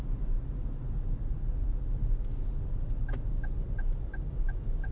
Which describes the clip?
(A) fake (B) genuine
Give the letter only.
B